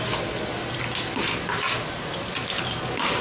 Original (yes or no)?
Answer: yes